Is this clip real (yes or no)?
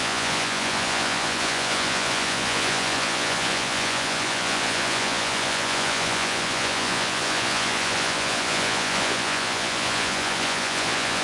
no